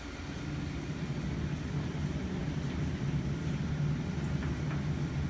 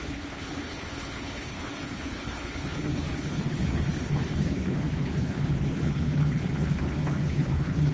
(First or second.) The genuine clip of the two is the first